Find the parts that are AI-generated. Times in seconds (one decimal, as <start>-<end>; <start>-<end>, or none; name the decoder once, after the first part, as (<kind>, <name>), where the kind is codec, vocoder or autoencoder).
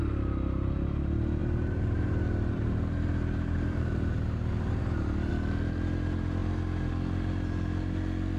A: 1.4-5.3 (vocoder, BigVGAN v2)